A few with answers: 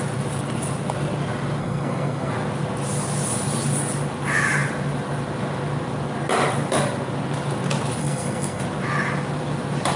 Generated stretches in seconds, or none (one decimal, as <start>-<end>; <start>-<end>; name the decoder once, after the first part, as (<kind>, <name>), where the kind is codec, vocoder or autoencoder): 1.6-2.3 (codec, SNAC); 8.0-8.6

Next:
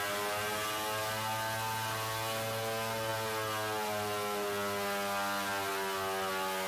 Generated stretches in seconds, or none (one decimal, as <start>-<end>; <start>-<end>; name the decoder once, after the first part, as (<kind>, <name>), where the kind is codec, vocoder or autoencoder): none

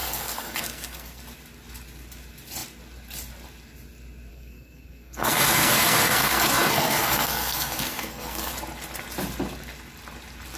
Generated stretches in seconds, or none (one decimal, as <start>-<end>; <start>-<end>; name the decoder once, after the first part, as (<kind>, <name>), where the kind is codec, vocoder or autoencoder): 0.0-1.2 (codec, SNAC); 4.3-8.5